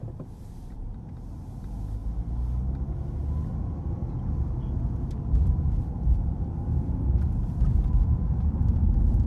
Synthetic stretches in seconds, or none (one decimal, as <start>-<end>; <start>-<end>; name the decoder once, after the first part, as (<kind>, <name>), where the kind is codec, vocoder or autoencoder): 0.0-2.0 (vocoder, BigVGAN v2); 3.5-4.0; 5.2-9.3